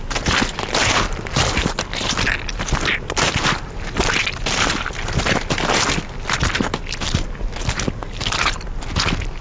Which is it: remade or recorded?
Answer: recorded